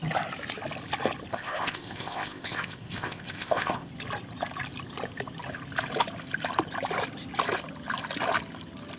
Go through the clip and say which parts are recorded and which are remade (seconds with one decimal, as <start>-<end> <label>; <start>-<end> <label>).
0.0-1.3 recorded; 1.3-3.9 remade; 3.9-9.0 recorded